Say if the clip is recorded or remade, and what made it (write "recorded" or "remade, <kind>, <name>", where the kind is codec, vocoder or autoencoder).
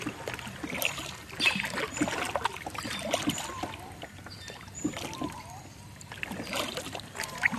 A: recorded